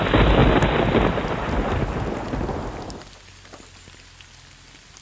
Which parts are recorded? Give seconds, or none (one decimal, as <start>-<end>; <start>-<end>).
0.0-5.0